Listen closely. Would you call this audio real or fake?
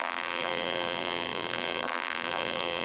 fake